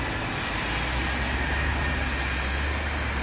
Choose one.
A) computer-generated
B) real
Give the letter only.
B